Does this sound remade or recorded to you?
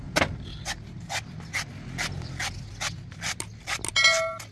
recorded